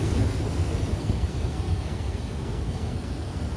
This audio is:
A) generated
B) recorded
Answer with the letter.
A